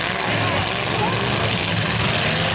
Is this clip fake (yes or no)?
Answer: no